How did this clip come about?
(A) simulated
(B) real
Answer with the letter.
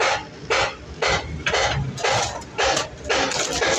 B